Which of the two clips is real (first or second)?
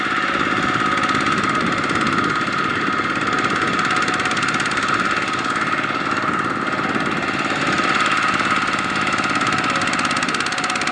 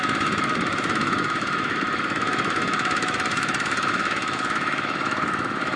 first